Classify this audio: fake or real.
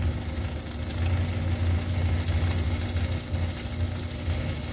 real